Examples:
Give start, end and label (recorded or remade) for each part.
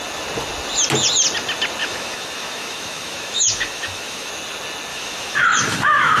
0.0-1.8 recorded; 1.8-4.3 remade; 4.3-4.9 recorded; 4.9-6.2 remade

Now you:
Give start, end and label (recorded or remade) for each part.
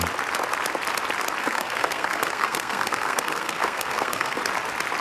0.0-1.4 recorded; 1.4-4.4 remade; 4.4-5.0 recorded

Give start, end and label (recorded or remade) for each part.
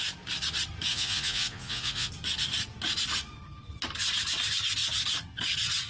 0.0-0.9 recorded; 0.9-2.1 remade; 2.1-5.9 recorded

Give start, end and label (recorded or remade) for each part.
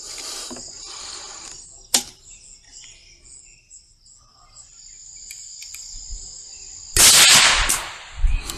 0.0-8.6 recorded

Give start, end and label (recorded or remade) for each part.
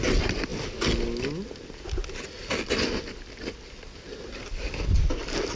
0.0-5.6 recorded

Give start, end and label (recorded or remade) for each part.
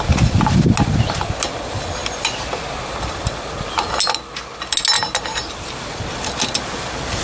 0.0-7.2 recorded